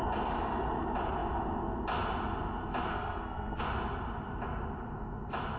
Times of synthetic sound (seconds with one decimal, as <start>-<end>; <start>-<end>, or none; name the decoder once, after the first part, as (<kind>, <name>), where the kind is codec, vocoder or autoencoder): 2.9-3.6 (codec, SNAC)